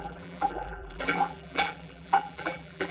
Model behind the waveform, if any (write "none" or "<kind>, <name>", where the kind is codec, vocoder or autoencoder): vocoder, BigVGAN v2